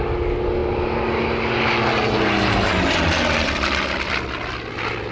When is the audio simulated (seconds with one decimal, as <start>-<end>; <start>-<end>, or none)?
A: none